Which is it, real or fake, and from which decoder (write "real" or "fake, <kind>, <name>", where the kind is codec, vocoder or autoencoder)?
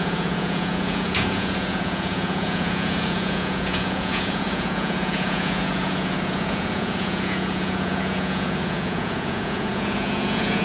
fake, vocoder, Vocos